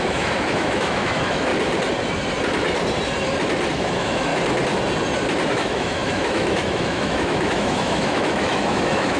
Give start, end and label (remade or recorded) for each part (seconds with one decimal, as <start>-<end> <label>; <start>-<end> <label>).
0.0-1.5 remade; 1.5-3.7 recorded; 3.7-4.3 remade; 4.3-5.5 recorded; 5.5-9.2 remade